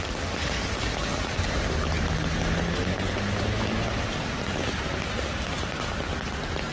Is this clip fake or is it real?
real